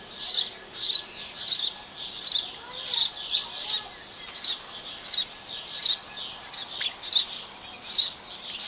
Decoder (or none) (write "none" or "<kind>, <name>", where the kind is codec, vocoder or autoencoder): none